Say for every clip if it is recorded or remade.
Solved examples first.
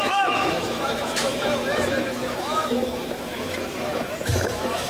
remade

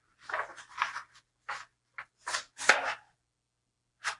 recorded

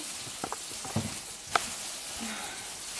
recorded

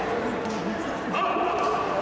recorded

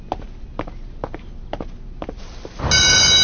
recorded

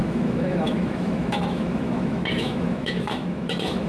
remade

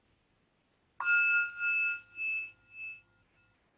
recorded